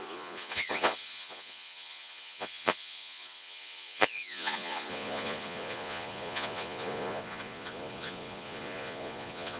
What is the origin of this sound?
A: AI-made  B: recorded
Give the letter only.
A